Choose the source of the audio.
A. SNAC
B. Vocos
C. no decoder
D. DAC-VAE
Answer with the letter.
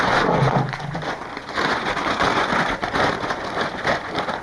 B